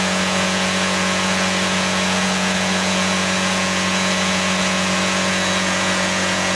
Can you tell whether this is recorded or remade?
remade